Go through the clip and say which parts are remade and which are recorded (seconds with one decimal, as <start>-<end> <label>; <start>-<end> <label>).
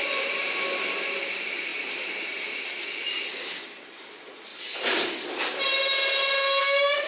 0.0-4.5 remade; 4.5-6.6 recorded; 6.6-7.1 remade